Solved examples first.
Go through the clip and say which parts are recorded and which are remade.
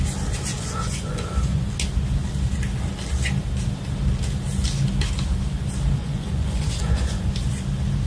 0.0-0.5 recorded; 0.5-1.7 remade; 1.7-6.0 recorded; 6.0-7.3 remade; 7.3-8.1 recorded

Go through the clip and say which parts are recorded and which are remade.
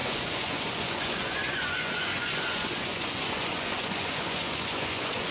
0.0-5.3 remade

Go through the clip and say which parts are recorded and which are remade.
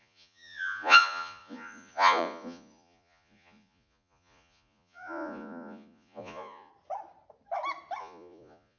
0.0-6.7 remade; 6.7-8.0 recorded; 8.0-8.8 remade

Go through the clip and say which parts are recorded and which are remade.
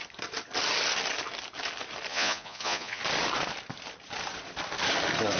0.0-2.1 recorded; 2.1-3.0 remade; 3.0-5.4 recorded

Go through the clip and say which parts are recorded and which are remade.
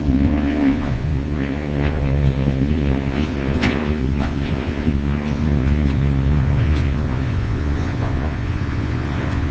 0.0-9.5 remade